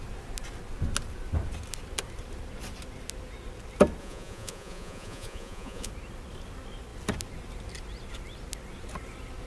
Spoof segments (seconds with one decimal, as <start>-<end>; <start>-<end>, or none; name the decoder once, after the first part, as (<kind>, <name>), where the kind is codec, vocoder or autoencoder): 4.0-5.9 (vocoder, Vocos)